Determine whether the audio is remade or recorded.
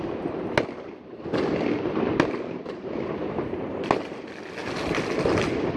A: recorded